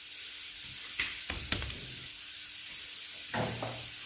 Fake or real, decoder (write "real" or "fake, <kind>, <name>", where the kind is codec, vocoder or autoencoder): fake, vocoder, BigVGAN v2